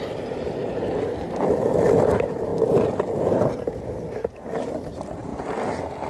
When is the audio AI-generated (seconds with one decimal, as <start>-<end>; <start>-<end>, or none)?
0.0-2.5; 3.2-5.3